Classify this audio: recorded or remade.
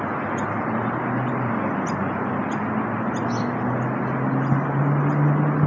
recorded